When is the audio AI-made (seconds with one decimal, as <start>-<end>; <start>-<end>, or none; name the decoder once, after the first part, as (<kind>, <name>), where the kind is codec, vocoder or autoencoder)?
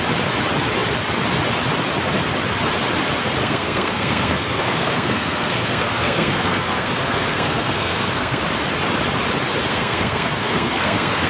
3.4-8.4 (codec, SNAC); 9.7-11.3